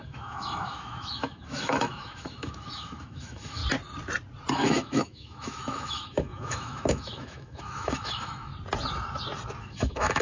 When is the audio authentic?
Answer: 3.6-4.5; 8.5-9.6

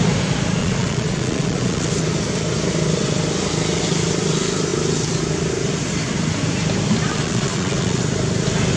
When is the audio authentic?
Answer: 0.0-0.6; 1.9-7.1; 8.0-8.8

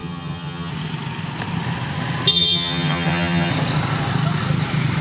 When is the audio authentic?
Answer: 0.7-2.3; 3.5-5.0

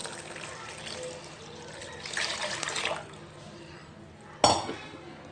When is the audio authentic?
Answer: 0.0-5.3

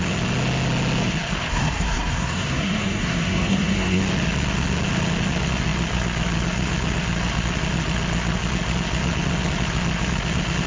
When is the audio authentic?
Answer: 0.0-1.5; 4.0-10.7

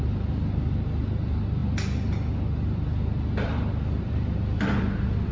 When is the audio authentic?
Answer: 0.0-5.3

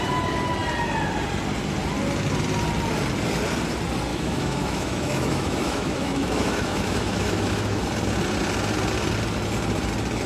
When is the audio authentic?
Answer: 0.0-4.1; 7.8-10.3